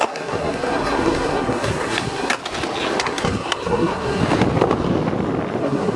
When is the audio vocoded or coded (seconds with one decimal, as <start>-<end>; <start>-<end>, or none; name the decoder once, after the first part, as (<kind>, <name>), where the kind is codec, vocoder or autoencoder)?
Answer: 0.0-2.4 (codec, SNAC); 3.0-4.2; 5.6-6.0